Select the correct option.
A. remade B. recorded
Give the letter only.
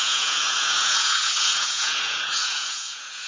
A